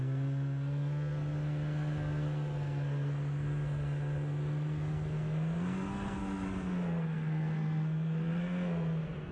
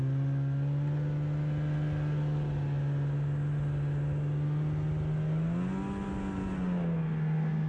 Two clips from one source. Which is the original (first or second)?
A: second